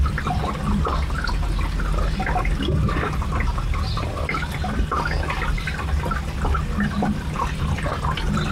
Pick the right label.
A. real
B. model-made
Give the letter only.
A